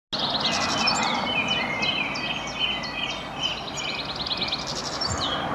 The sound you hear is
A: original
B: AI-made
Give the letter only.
A